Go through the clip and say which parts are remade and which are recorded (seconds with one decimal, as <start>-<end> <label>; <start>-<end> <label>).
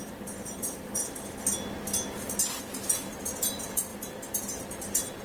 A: 0.0-1.0 remade; 1.0-2.6 recorded; 2.6-5.2 remade